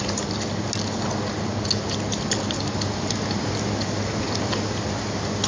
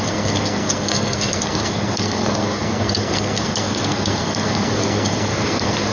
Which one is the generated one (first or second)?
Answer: second